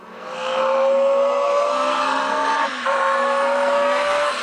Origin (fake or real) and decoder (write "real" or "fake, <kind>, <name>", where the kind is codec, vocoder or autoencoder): fake, codec, SNAC